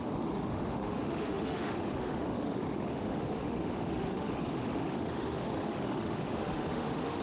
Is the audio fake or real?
fake